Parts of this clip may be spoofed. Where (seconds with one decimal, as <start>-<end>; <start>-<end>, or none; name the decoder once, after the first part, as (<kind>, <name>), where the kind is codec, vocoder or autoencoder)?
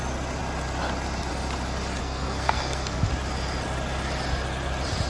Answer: 2.0-3.1 (codec, SNAC)